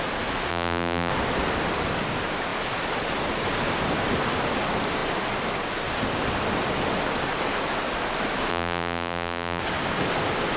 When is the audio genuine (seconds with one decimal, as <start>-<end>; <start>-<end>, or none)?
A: 0.0-0.5; 1.1-8.5; 9.6-10.6

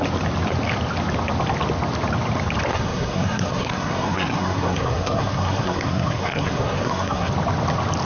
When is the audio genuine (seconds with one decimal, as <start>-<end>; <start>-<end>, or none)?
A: 0.0-2.7; 7.3-8.0

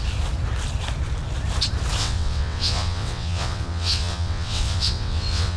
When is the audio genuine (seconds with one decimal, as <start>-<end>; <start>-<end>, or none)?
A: 0.0-2.0

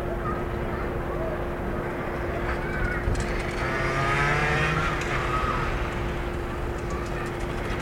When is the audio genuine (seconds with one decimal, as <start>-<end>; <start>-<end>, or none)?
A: 0.0-7.8

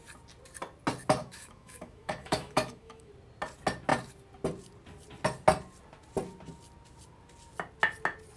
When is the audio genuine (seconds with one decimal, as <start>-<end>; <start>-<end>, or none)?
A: 0.0-1.2; 3.1-8.4

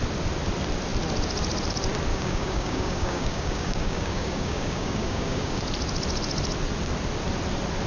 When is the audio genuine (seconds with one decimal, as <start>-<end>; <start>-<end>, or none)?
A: 0.0-2.1; 5.6-7.9